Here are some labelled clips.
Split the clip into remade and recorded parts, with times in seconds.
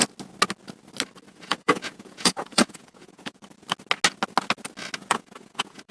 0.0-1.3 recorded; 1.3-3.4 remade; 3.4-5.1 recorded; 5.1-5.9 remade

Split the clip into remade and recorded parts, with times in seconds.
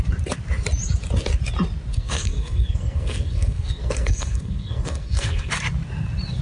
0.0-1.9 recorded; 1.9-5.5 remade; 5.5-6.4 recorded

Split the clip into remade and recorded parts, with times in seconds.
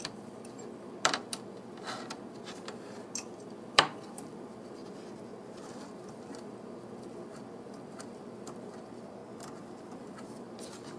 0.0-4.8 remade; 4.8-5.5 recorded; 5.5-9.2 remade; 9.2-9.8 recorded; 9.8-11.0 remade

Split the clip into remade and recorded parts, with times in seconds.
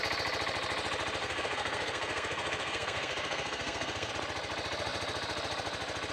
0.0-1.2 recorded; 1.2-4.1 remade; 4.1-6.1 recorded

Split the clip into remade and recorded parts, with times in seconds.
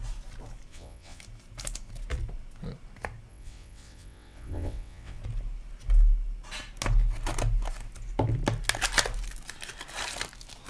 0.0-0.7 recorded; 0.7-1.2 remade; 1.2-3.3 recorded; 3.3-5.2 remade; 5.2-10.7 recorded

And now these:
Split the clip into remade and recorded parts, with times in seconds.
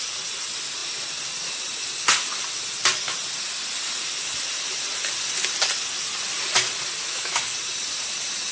0.0-7.0 recorded; 7.0-7.5 remade; 7.5-8.5 recorded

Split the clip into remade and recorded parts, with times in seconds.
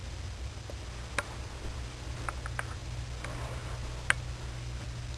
0.0-5.2 recorded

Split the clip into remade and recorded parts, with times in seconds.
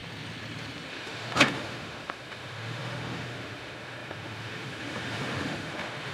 0.0-0.9 recorded; 0.9-6.1 remade